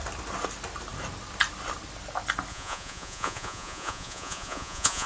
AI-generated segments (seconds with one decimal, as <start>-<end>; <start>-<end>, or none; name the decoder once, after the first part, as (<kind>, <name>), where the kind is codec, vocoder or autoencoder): 2.5-5.1 (vocoder, Vocos)